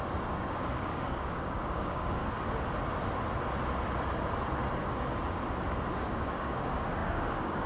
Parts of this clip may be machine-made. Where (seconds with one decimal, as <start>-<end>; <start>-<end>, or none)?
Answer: 0.0-2.2; 5.9-7.7